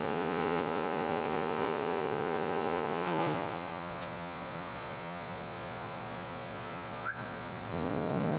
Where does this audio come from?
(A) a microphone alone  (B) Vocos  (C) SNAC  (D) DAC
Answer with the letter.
B